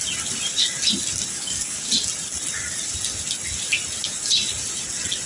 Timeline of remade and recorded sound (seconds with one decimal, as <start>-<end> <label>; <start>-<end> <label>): 0.0-1.3 recorded; 1.3-1.9 remade; 1.9-5.3 recorded